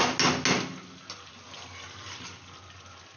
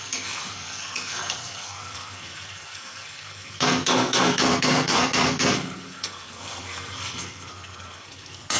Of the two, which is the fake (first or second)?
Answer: second